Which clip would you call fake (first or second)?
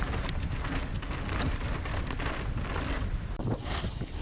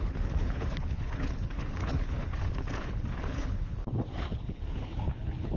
second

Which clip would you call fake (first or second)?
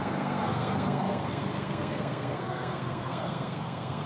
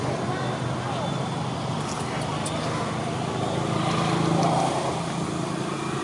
first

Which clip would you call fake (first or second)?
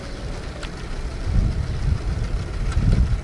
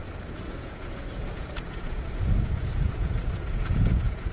second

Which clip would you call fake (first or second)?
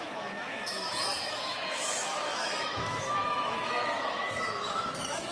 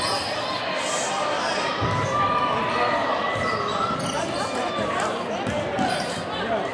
first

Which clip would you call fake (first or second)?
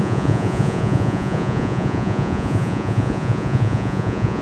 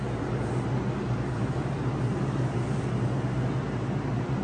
first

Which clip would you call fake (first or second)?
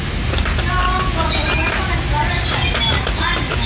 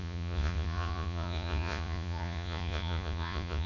second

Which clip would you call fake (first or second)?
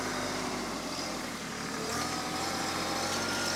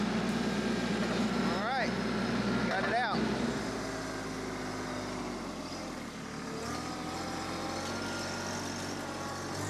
first